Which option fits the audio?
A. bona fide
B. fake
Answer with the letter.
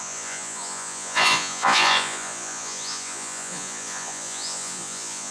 B